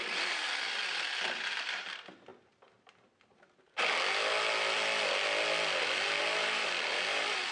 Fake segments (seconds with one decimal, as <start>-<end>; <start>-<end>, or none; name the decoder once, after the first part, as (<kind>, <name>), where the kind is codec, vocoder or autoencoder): 0.0-2.3 (vocoder, BigVGAN v2); 6.2-7.5